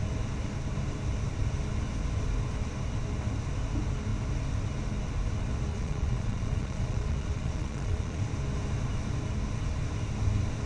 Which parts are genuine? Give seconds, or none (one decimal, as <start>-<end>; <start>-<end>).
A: 0.0-5.7; 8.2-10.7